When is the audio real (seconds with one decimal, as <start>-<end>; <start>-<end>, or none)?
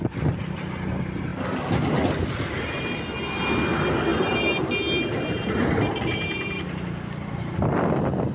0.0-4.1; 4.6-8.3